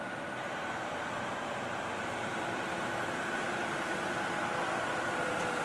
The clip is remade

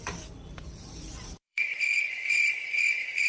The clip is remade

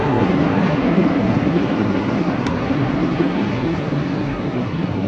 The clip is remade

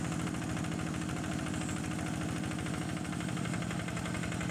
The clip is recorded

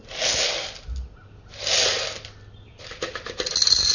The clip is recorded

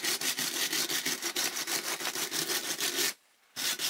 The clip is recorded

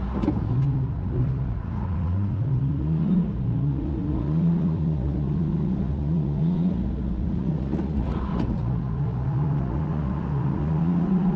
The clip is remade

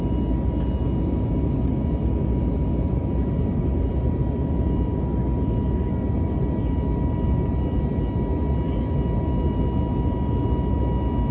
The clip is recorded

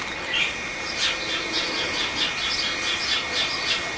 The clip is recorded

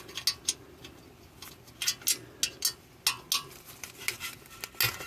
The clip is recorded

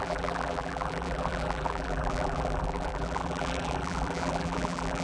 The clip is remade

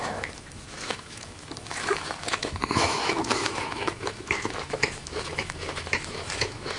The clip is remade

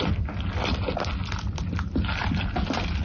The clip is recorded